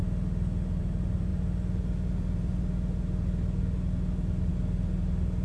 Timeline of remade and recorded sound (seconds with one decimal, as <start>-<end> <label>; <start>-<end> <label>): 0.0-5.4 recorded